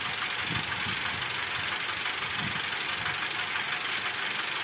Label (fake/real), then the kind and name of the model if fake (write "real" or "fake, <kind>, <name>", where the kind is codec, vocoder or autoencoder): real